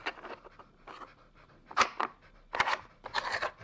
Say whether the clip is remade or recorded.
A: recorded